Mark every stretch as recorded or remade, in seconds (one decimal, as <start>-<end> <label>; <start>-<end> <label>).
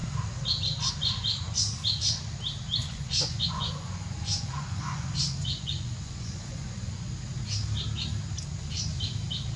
0.0-2.8 recorded; 2.8-7.1 remade; 7.1-9.6 recorded